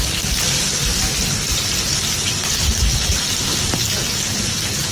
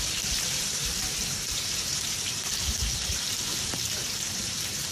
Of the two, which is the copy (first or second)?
second